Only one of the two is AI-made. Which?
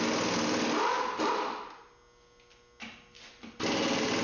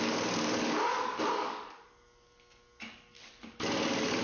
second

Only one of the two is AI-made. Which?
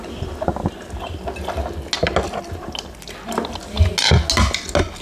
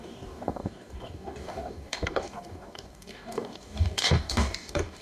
second